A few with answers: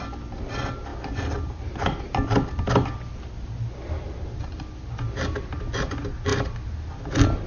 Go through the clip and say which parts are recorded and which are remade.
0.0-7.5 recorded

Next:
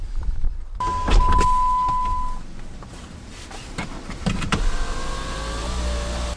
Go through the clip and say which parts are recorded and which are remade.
0.0-6.4 recorded

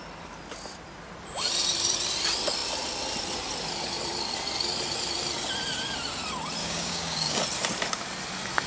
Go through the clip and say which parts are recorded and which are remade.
0.0-6.6 recorded; 6.6-7.4 remade; 7.4-8.7 recorded

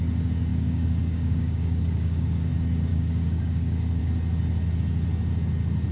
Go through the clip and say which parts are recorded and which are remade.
0.0-0.5 recorded; 0.5-2.5 remade; 2.5-2.9 recorded; 2.9-4.0 remade; 4.0-5.9 recorded

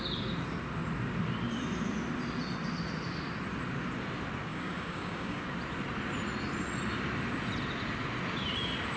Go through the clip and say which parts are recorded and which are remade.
0.0-4.5 recorded; 4.5-5.4 remade; 5.4-9.0 recorded

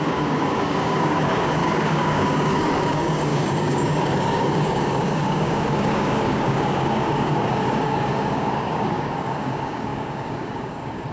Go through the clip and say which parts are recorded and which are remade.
0.0-11.1 remade

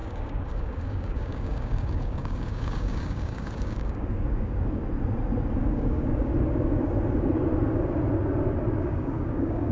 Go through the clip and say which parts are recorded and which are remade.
0.0-4.8 remade; 4.8-5.5 recorded; 5.5-6.3 remade; 6.3-8.8 recorded; 8.8-9.7 remade

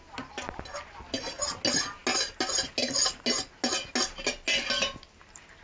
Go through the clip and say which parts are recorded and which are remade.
0.0-5.6 recorded